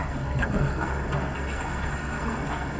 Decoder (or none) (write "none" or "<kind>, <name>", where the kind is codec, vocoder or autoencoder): codec, SNAC